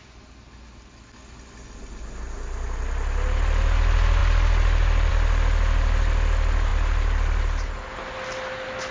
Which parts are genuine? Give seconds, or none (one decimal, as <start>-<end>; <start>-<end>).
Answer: 0.0-8.9